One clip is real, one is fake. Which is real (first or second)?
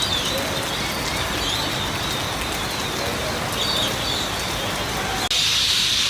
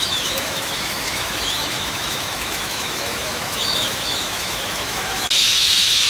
first